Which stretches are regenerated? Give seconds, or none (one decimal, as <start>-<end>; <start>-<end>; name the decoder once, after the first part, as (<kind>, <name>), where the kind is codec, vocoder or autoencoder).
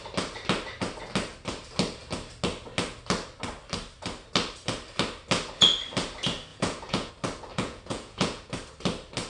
6.5-7.1 (vocoder, Vocos); 7.5-8.4